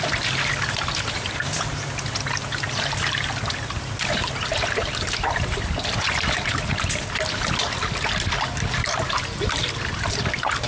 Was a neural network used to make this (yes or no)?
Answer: no